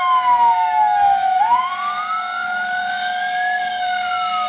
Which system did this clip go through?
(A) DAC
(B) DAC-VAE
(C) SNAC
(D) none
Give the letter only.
A